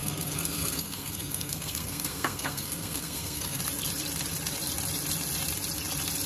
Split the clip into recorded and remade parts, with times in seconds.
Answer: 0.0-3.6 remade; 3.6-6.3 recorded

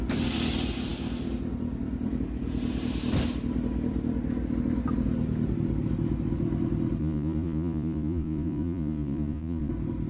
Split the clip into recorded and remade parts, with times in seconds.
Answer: 0.0-7.0 recorded; 7.0-9.7 remade; 9.7-10.1 recorded

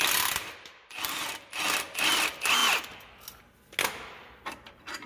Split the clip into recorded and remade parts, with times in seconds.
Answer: 0.0-5.1 recorded

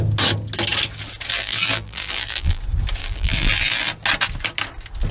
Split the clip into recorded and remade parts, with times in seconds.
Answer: 0.0-1.3 recorded; 1.3-2.6 remade; 2.6-3.0 recorded; 3.0-3.9 remade; 3.9-5.1 recorded

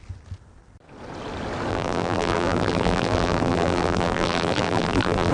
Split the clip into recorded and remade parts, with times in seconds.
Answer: 0.0-1.7 recorded; 1.7-5.3 remade

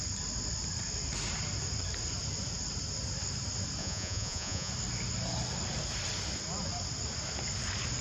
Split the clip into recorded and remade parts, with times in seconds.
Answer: 0.0-3.8 recorded; 3.8-4.7 remade; 4.7-8.0 recorded

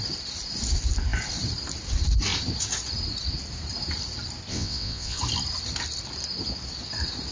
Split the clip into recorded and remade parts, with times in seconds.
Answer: 0.0-4.5 recorded; 4.5-5.2 remade; 5.2-7.3 recorded